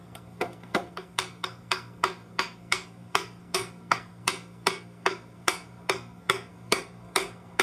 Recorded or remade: remade